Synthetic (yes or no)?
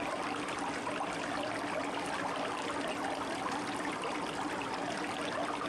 no